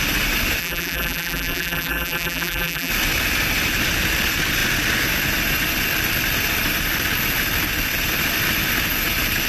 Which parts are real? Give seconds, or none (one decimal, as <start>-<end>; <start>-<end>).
0.0-0.6; 2.9-9.5